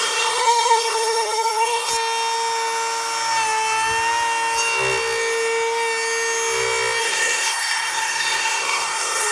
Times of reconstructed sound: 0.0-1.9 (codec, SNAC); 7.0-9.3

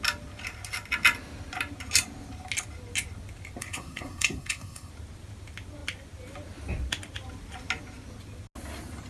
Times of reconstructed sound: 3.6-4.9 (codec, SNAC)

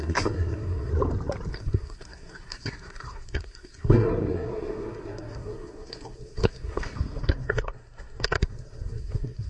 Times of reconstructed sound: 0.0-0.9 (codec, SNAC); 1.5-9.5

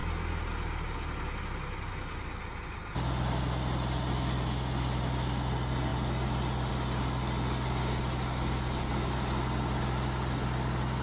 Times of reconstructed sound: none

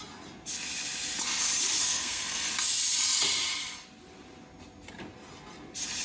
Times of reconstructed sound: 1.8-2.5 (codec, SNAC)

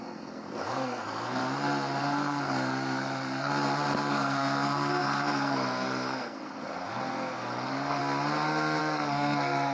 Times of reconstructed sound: 0.0-1.4 (codec, SNAC); 2.0-3.5; 4.1-8.0; 8.8-9.7